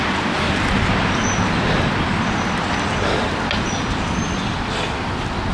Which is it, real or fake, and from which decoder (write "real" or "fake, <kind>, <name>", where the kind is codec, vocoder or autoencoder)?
real